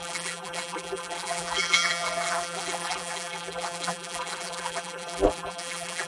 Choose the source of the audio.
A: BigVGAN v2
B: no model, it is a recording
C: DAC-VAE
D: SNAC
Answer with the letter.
A